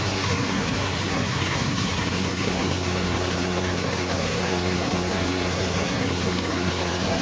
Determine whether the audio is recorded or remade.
remade